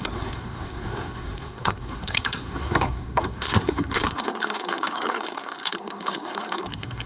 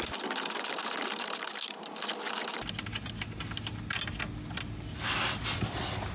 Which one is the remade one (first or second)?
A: first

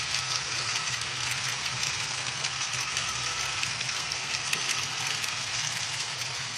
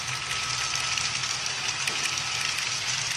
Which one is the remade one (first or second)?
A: first